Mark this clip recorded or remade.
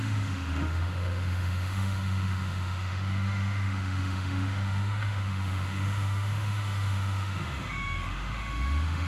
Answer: remade